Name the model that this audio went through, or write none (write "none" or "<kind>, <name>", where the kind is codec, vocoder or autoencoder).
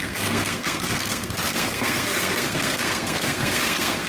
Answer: codec, SNAC